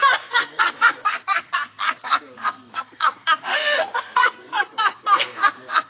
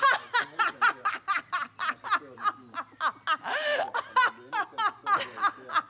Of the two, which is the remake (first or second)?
first